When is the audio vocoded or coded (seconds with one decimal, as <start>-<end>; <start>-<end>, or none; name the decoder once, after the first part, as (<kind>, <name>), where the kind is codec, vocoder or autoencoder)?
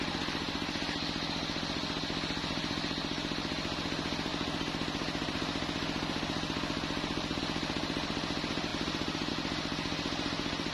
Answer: none